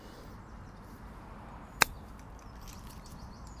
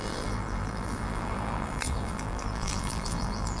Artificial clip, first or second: second